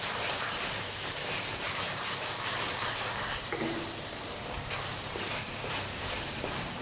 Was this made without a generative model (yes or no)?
no